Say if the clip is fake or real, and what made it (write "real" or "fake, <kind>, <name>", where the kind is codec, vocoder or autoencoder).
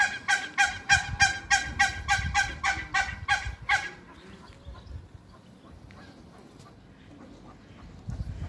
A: real